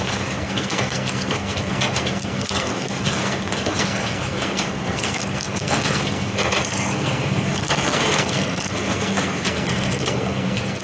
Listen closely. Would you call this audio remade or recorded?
remade